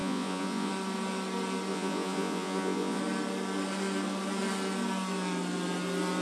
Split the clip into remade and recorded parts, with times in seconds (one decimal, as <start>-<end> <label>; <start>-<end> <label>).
0.0-0.7 remade; 0.7-1.7 recorded; 1.7-3.0 remade; 3.0-6.2 recorded